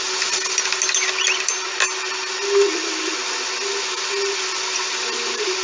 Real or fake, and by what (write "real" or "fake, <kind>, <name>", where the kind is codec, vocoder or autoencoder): real